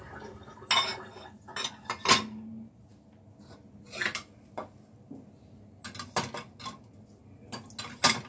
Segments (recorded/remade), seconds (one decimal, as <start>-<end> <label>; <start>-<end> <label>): 0.0-8.3 recorded